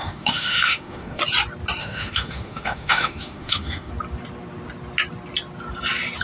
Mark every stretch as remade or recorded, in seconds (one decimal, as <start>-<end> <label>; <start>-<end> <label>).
0.0-1.2 remade; 1.2-1.8 recorded; 1.8-3.9 remade; 3.9-6.2 recorded